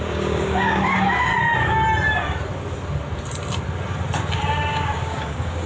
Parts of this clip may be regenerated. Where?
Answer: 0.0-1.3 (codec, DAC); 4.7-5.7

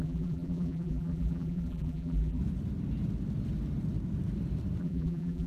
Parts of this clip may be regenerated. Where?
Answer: 0.0-2.4 (vocoder, BigVGAN v2); 4.8-5.5

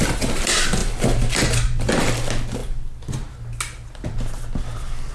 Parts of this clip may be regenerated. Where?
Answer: 0.8-2.1 (vocoder, BigVGAN v2)

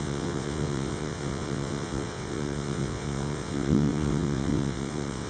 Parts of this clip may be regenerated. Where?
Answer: 0.0-5.3 (vocoder, WaveNeXt)

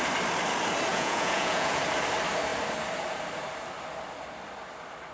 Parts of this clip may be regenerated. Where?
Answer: 0.9-1.8 (vocoder, Vocos)